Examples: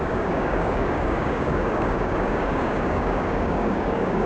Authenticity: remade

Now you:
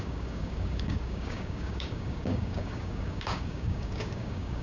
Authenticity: remade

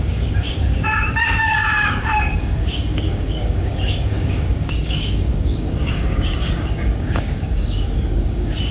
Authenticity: remade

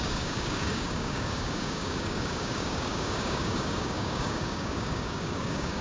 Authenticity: remade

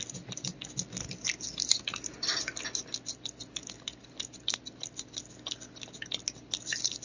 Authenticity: recorded